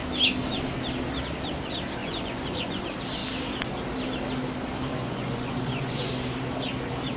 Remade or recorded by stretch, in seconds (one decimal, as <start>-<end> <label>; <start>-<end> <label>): 0.0-2.0 recorded; 2.0-2.8 remade; 2.8-4.9 recorded; 4.9-6.1 remade; 6.1-7.2 recorded